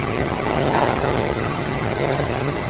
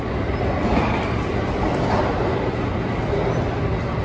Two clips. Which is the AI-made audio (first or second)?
first